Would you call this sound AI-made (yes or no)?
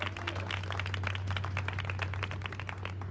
no